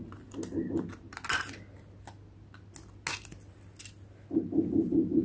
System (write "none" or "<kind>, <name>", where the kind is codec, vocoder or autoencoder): none